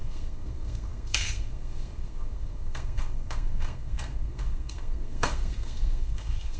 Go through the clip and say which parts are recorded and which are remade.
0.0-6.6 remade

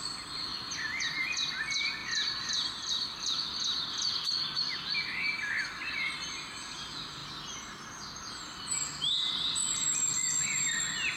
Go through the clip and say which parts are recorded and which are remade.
0.0-11.2 recorded

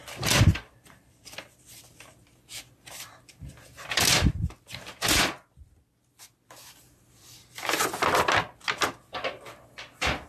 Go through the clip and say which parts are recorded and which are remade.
0.0-3.1 remade; 3.1-10.3 recorded

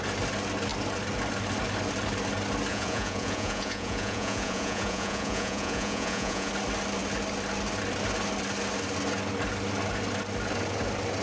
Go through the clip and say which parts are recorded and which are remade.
0.0-2.7 recorded; 2.7-6.5 remade; 6.5-11.2 recorded